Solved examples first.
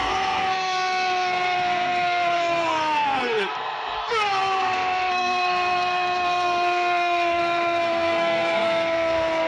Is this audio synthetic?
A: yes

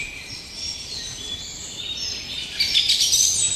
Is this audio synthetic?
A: yes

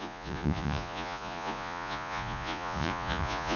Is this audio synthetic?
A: yes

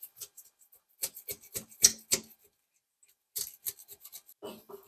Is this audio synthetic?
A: no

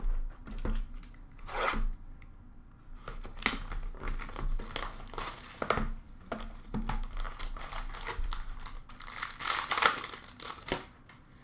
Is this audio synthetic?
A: no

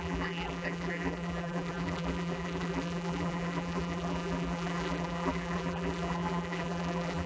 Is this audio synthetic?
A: yes